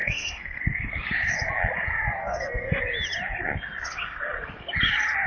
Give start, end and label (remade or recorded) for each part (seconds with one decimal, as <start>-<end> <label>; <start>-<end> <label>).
0.0-0.6 remade; 0.6-2.2 recorded; 2.2-2.8 remade; 2.8-5.3 recorded